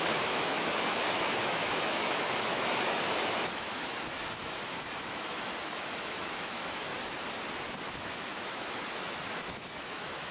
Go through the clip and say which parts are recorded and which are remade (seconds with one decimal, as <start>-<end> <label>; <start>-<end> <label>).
0.0-6.9 remade; 6.9-7.9 recorded; 7.9-10.3 remade